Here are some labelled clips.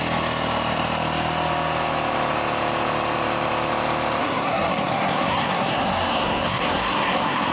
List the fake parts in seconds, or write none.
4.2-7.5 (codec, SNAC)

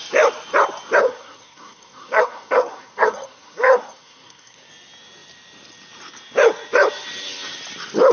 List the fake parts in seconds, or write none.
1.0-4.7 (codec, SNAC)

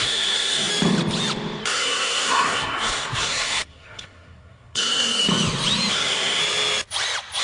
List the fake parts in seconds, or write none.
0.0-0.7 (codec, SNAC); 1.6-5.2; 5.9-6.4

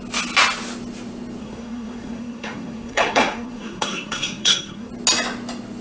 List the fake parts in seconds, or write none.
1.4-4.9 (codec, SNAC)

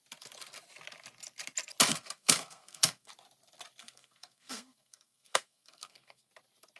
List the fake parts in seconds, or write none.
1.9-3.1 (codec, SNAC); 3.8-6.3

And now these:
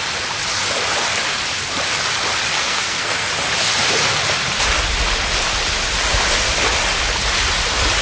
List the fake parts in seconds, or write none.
2.5-3.3 (codec, SNAC)

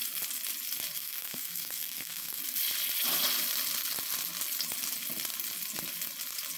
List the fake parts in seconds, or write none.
1.0-2.4 (codec, SNAC)

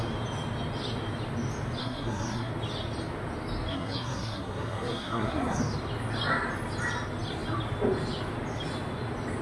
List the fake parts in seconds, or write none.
1.8-2.5 (codec, SNAC); 3.7-5.6